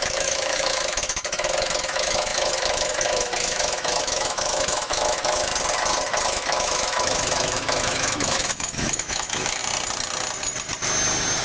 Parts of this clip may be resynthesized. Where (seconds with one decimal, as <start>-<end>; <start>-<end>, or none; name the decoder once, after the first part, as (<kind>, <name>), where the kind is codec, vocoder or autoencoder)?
0.0-5.5 (autoencoder, DAC-VAE); 6.2-9.6

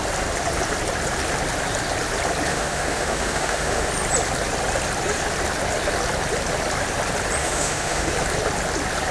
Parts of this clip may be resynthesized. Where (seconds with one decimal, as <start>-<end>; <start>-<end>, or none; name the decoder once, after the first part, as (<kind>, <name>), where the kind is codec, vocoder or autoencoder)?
2.5-3.9 (autoencoder, DAC-VAE); 7.4-8.1